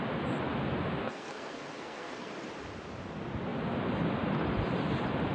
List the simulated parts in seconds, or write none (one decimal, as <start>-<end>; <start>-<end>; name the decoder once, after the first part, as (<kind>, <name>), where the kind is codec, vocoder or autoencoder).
1.0-2.3 (codec, SNAC)